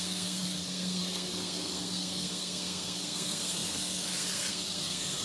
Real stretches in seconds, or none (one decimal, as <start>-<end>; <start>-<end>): none